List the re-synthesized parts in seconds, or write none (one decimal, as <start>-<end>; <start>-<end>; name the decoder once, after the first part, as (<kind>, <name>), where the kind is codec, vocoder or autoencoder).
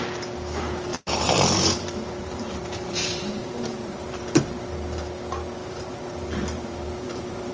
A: 0.9-4.2 (vocoder, BigVGAN v2); 5.6-7.5